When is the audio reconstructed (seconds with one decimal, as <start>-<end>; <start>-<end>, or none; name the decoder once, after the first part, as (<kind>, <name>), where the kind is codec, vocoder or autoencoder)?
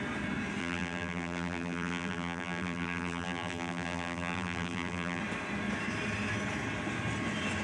0.6-5.2 (vocoder, BigVGAN v2)